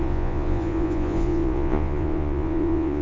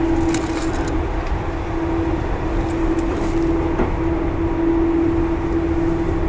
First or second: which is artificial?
first